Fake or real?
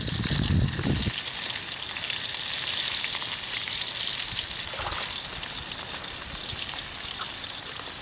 real